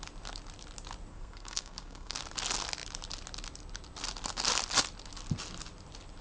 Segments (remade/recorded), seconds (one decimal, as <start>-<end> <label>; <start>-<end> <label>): 0.0-1.1 recorded; 1.1-2.2 remade; 2.2-6.2 recorded